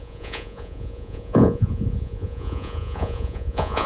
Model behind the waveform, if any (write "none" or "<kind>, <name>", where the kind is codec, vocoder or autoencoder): vocoder, Vocos